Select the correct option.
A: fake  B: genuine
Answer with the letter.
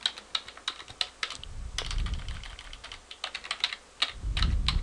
B